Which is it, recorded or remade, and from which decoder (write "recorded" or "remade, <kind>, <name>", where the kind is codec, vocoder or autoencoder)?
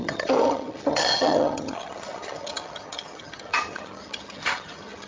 remade, vocoder, HiFi-GAN